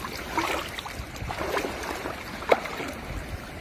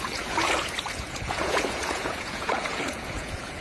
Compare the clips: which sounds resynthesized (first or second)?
second